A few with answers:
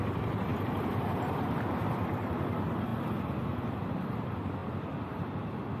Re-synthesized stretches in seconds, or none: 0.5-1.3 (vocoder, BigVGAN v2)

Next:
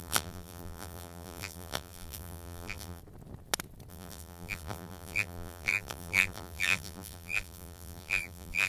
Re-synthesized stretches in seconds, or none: 0.0-3.0 (vocoder, BigVGAN v2); 3.9-8.7

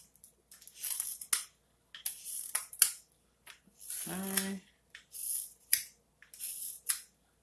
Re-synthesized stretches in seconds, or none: none

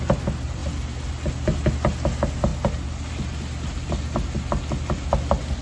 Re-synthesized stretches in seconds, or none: none

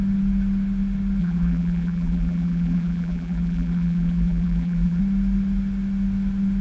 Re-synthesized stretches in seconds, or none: 1.2-5.0 (vocoder, BigVGAN v2)